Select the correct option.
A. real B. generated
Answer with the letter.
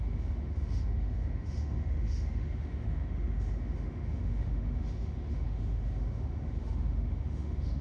B